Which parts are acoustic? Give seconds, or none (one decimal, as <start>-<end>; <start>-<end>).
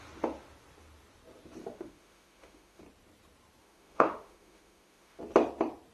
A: 0.0-1.6; 2.8-3.6; 5.2-5.9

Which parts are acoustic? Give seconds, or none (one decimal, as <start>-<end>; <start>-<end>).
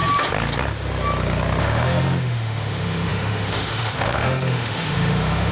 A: 0.0-1.6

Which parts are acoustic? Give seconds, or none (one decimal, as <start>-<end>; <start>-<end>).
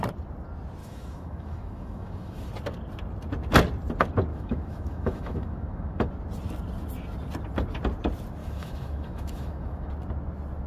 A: 0.0-0.8; 2.5-4.3; 6.1-8.4; 9.9-10.7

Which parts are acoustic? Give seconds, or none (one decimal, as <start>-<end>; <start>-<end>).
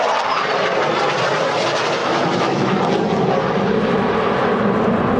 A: 0.0-2.0; 2.7-5.2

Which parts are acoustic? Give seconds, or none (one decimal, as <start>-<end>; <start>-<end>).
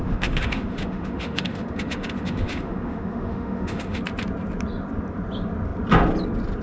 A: 4.0-6.6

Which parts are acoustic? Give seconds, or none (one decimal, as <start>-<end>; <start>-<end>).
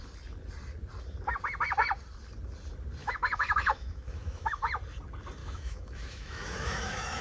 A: 0.0-3.0; 4.6-5.4